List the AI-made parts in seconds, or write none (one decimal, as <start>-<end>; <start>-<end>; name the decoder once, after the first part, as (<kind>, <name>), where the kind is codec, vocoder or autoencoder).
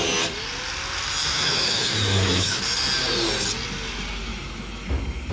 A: 1.3-2.6 (autoencoder, DAC-VAE); 4.3-5.3